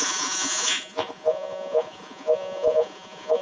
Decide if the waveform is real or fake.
fake